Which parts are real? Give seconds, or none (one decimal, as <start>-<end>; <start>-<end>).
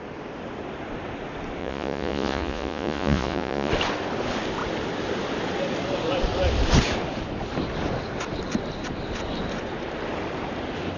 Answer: 0.0-1.6; 3.7-11.0